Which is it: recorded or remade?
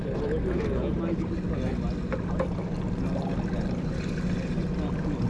recorded